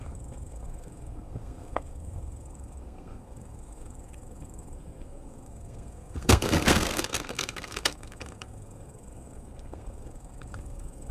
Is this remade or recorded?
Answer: remade